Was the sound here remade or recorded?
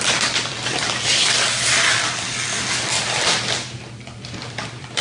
remade